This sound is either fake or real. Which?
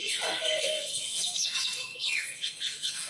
fake